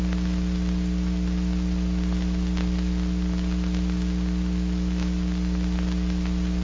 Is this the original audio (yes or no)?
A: yes